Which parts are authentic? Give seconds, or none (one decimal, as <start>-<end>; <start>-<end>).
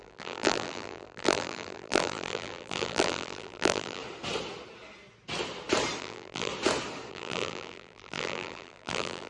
4.0-6.0; 6.5-7.1